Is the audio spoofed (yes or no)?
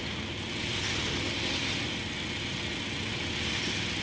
no